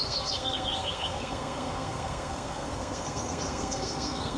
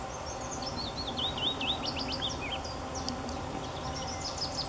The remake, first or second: first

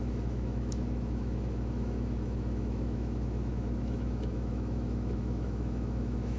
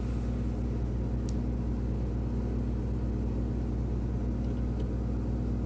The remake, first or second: first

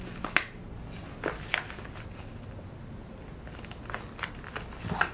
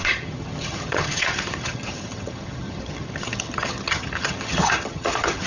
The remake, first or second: second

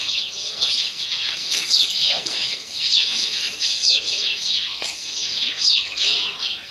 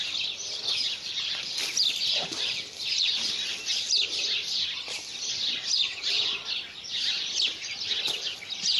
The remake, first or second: first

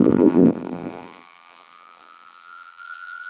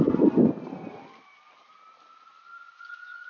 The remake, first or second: first